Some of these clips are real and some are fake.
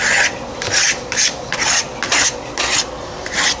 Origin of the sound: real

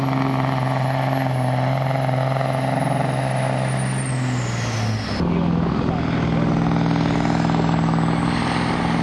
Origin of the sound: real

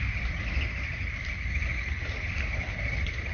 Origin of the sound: real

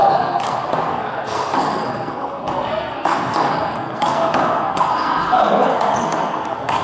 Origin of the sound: fake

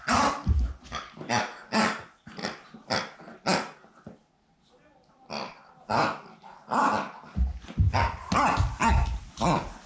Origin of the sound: real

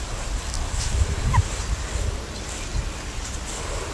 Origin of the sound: real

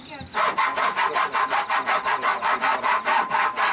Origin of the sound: real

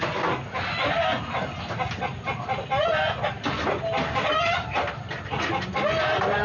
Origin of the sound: real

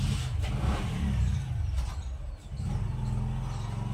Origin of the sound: real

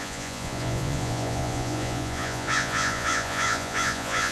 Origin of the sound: fake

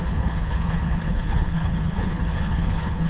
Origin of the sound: fake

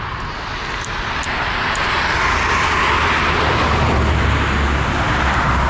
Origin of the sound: real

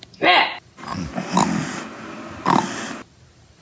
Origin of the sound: real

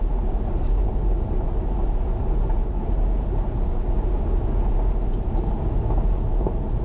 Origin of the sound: real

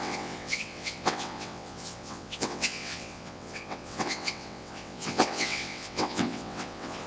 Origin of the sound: fake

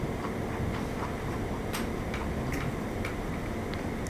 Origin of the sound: real